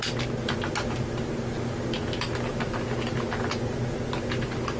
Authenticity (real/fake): real